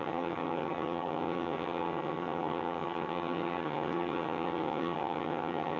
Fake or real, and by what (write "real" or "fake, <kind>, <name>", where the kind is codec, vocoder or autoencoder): fake, vocoder, HiFi-GAN